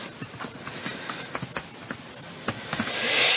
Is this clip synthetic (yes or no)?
no